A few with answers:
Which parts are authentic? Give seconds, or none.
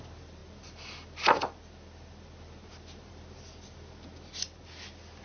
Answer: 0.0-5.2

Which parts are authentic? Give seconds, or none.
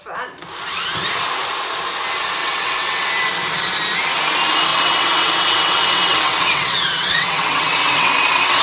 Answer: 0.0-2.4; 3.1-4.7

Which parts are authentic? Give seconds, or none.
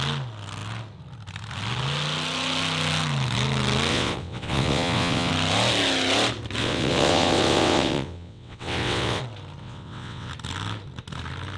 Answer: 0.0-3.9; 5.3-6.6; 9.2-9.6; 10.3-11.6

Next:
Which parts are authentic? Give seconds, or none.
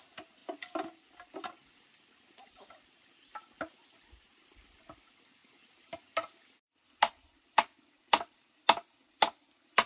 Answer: 0.0-9.9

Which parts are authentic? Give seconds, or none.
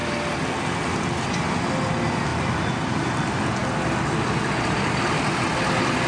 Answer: 0.0-6.1